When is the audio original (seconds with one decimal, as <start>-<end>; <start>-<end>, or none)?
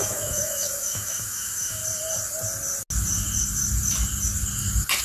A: 1.8-5.0